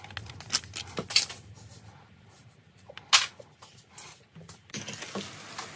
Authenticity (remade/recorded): recorded